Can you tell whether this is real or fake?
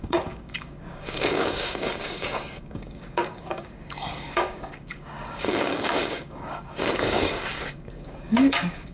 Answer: fake